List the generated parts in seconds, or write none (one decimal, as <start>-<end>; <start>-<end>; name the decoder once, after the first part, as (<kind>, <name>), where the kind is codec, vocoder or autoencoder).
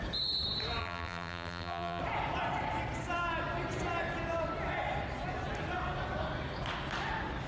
0.8-2.0 (vocoder, BigVGAN v2)